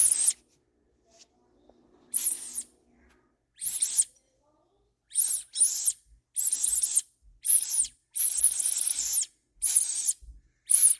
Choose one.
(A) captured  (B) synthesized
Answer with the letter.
A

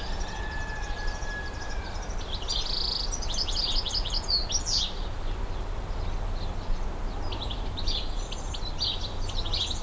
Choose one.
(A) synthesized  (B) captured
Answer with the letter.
B